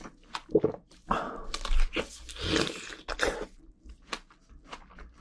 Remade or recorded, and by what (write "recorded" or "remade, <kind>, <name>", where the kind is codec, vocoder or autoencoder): recorded